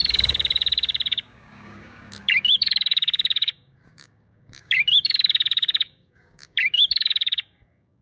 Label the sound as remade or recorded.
remade